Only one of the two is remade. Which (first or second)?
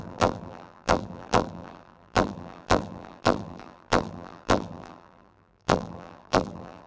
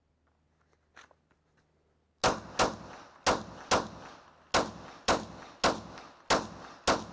first